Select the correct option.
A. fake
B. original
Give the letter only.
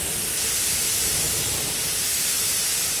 B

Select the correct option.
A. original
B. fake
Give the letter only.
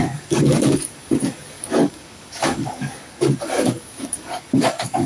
B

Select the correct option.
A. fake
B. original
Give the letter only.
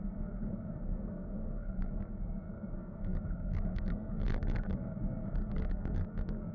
A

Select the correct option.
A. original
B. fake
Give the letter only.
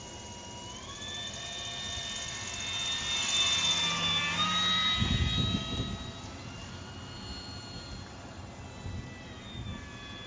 A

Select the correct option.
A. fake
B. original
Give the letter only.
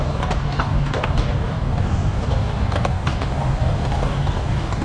A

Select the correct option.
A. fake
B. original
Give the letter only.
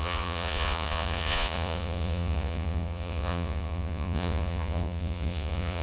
A